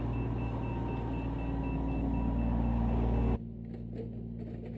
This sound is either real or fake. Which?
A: real